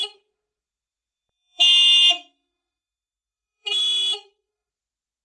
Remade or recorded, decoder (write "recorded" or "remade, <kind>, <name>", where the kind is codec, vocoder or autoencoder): remade, autoencoder, DAC-VAE